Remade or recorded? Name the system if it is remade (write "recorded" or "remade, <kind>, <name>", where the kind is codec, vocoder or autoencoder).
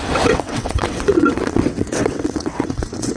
remade, vocoder, WaveNeXt